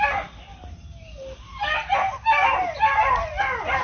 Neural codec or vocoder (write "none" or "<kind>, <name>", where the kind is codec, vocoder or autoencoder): none